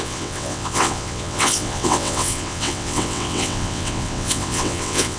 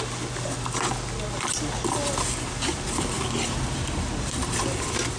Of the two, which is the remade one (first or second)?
first